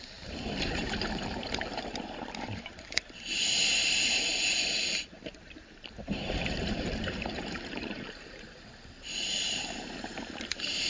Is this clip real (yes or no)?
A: no